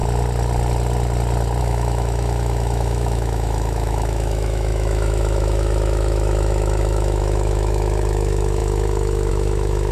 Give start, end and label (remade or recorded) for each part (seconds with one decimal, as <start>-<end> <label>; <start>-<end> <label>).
0.0-1.6 recorded; 1.6-9.9 remade